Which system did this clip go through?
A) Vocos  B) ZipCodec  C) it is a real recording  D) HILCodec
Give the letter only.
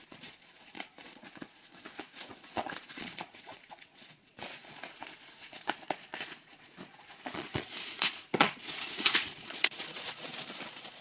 A